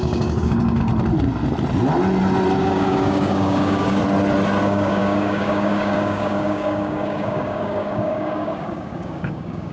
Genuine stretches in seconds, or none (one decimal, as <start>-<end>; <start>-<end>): 0.9-2.6; 4.0-4.6